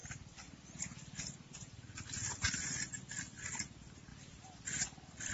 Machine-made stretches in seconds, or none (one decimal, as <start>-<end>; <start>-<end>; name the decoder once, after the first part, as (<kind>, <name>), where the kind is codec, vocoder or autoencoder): 0.0-3.2 (vocoder, BigVGAN v2); 4.1-5.3